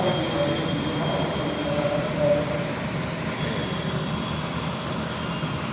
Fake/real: real